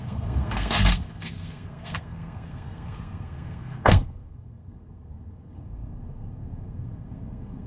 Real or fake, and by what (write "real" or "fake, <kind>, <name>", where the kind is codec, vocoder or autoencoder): fake, codec, SNAC